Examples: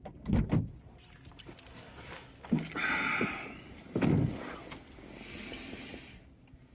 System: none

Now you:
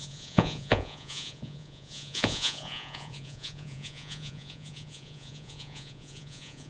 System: vocoder, Vocos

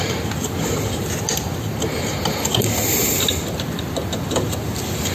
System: none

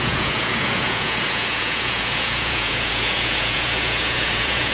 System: vocoder, Vocos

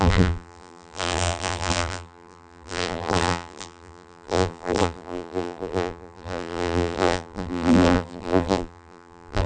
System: vocoder, BigVGAN v2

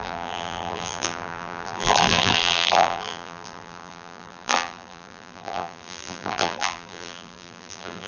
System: vocoder, BigVGAN v2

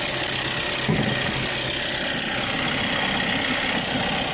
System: none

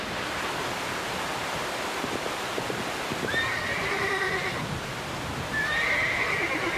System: vocoder, BigVGAN v2